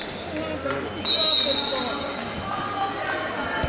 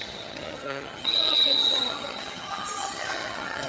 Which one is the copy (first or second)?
second